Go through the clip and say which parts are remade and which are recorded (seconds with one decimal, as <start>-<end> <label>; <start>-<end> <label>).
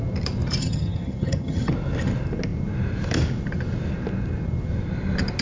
0.0-0.6 recorded; 0.6-1.7 remade; 1.7-5.4 recorded